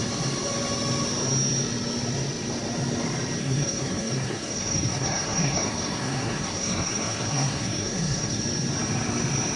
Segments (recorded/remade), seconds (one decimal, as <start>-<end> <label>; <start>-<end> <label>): 0.0-3.4 recorded; 3.4-8.4 remade; 8.4-9.6 recorded